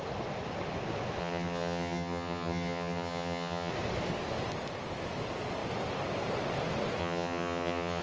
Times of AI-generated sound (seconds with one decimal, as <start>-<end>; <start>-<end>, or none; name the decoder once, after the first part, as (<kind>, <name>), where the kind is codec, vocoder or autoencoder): 1.2-3.7 (vocoder, HiFi-GAN); 7.0-8.0